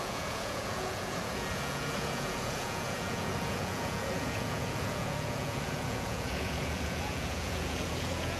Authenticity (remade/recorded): remade